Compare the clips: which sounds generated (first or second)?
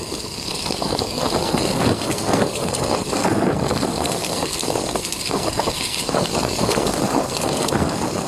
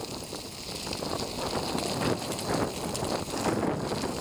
first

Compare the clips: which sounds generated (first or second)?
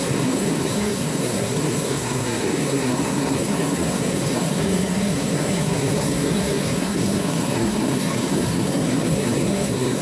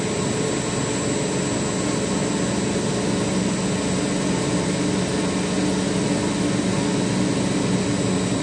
first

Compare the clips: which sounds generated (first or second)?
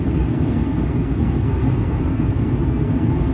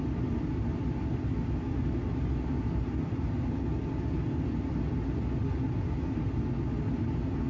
first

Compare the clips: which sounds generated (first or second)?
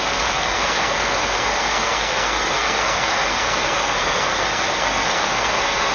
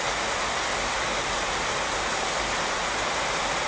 first